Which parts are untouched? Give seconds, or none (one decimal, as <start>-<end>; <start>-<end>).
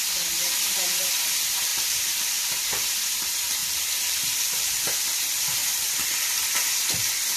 0.0-1.7; 2.5-3.6; 4.7-7.4